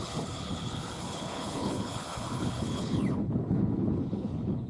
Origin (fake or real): fake